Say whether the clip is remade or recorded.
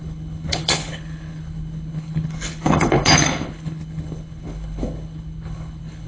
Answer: remade